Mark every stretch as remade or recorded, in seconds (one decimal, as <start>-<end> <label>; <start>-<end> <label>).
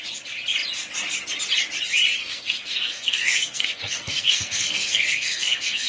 0.0-2.2 recorded; 2.2-5.9 remade